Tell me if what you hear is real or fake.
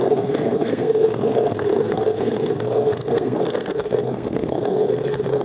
fake